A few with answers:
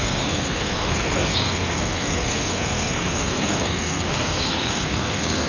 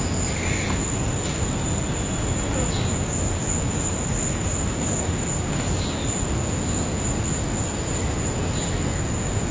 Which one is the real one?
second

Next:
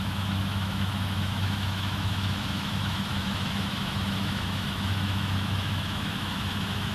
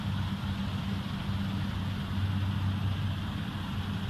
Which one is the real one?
second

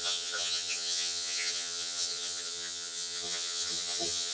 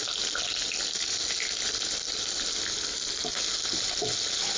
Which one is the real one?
second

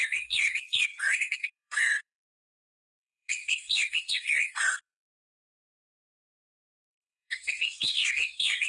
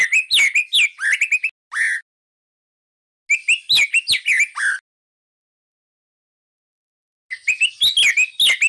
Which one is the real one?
second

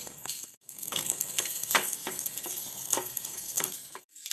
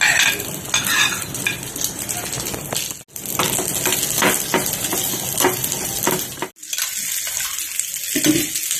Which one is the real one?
second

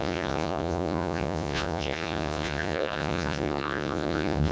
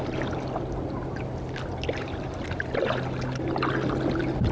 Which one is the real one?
second